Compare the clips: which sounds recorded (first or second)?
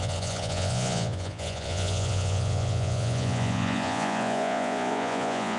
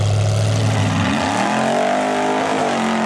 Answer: second